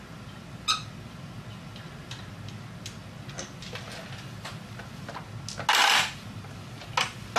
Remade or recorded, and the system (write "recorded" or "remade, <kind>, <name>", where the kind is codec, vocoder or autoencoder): recorded